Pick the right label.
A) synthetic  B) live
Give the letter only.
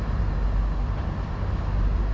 B